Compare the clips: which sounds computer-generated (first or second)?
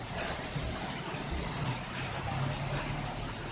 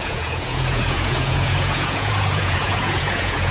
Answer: second